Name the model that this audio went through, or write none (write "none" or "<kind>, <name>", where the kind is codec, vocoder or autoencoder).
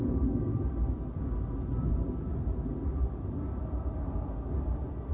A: none